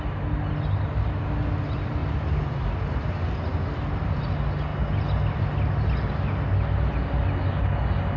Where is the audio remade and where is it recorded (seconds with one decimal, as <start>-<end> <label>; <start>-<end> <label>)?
0.0-8.2 recorded